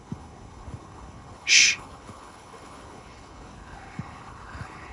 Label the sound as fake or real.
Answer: fake